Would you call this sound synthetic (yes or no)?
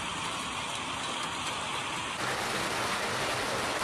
no